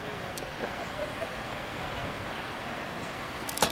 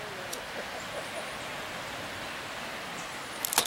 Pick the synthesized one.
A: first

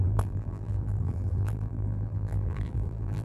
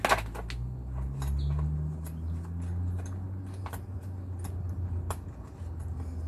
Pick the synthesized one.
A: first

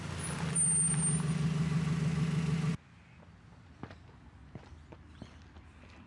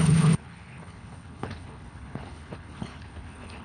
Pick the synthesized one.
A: second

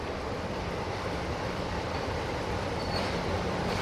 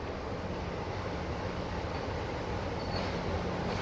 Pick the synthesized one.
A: first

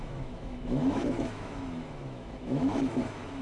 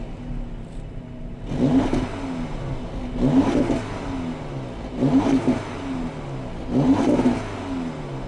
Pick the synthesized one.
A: first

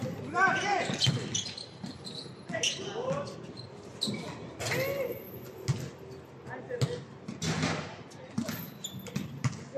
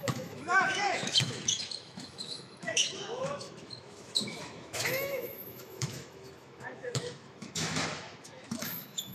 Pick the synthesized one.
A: second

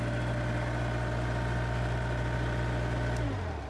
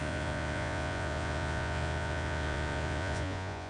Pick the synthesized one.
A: second